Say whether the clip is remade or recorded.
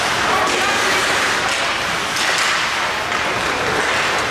recorded